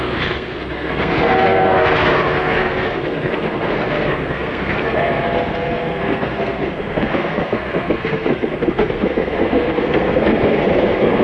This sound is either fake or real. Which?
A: fake